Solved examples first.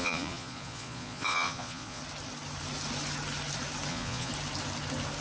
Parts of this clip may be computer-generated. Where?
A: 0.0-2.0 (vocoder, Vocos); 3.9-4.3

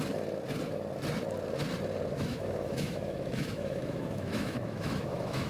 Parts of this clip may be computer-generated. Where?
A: 2.1-5.5 (autoencoder, DAC-VAE)

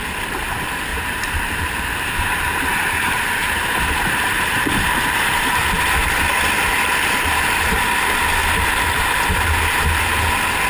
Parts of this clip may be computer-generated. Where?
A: 0.9-5.7 (vocoder, BigVGAN v2)

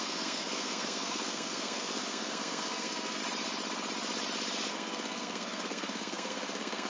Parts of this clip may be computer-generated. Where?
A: 0.0-3.2 (codec, SNAC); 4.7-6.9

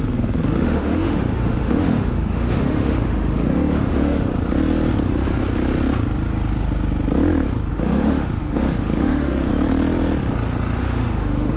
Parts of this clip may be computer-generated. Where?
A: 0.0-4.3 (autoencoder, DAC-VAE); 7.7-9.5; 10.8-11.6